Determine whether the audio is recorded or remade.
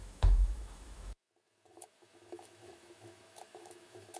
remade